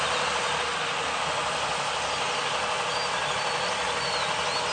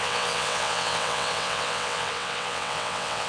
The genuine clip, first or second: first